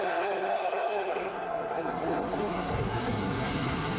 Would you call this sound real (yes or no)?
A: no